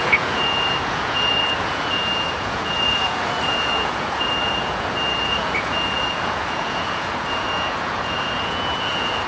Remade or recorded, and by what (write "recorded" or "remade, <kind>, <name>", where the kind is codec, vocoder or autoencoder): remade, vocoder, Vocos